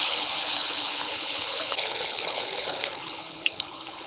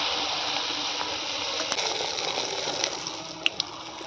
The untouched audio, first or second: second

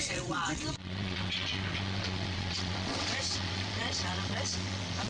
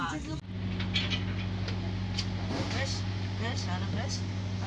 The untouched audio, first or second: second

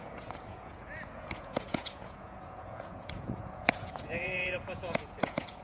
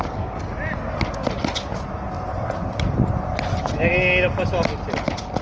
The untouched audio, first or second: second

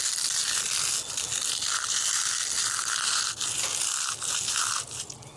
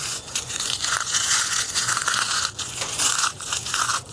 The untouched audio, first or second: first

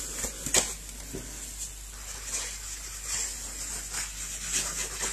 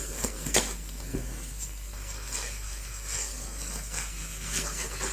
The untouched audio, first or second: first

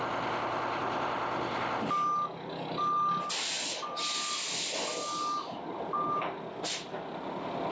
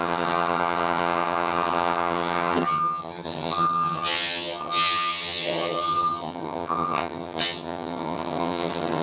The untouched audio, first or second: first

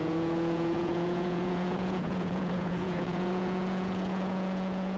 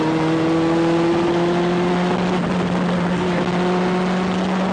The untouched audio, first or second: second